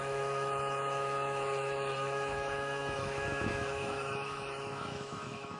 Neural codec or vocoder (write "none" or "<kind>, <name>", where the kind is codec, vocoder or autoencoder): autoencoder, DAC-VAE